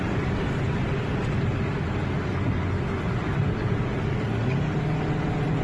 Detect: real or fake real